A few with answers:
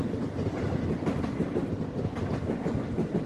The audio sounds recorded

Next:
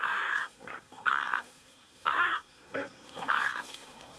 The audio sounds remade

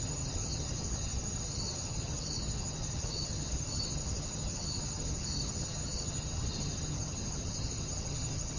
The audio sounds remade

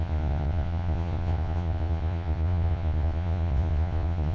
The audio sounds remade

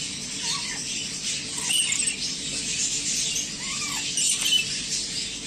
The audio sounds recorded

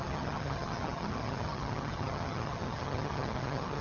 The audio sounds remade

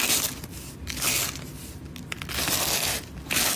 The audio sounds recorded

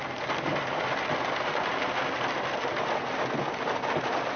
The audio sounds recorded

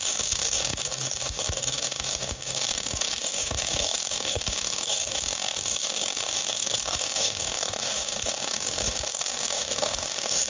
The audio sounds remade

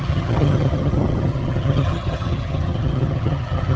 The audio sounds remade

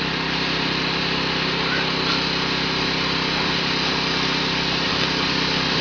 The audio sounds recorded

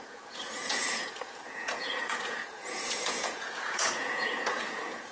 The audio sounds remade